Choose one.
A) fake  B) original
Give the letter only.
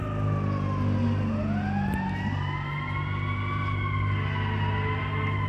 B